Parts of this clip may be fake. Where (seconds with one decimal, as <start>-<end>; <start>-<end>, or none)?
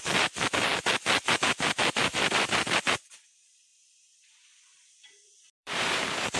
2.1-2.8; 3.7-6.4